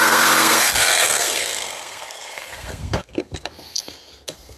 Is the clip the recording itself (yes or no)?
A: no